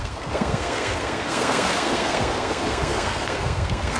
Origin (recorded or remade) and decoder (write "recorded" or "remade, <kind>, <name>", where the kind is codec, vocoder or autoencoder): remade, codec, SNAC